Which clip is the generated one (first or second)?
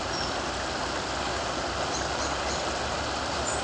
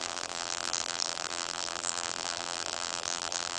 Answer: second